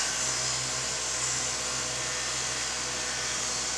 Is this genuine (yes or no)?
yes